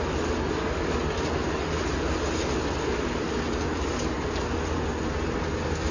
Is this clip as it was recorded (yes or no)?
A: yes